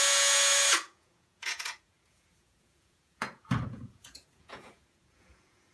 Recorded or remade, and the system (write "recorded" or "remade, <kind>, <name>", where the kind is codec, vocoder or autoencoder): remade, vocoder, Vocos